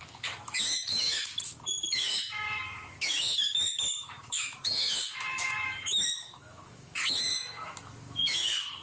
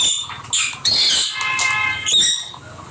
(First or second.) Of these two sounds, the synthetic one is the first